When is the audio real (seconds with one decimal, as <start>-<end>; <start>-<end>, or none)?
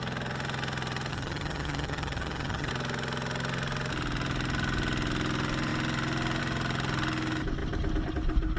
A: 0.0-1.1; 2.7-8.6